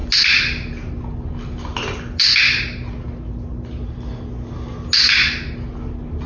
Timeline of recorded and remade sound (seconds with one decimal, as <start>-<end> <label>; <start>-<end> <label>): 0.0-6.3 recorded